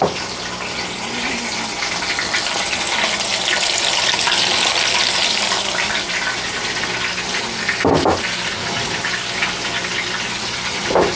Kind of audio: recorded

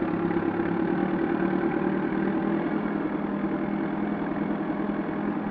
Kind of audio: recorded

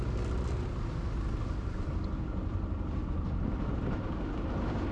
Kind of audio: recorded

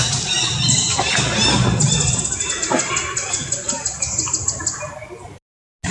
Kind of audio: recorded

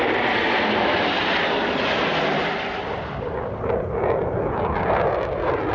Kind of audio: recorded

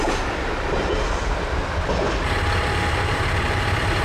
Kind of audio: recorded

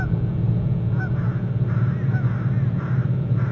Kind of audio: recorded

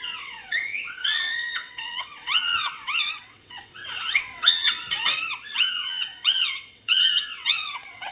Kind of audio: remade